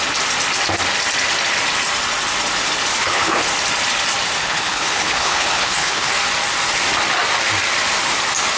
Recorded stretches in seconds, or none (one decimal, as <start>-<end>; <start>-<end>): 0.0-2.9; 3.4-4.4; 6.1-8.6